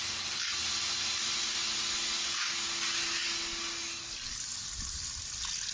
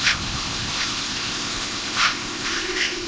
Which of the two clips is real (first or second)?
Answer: first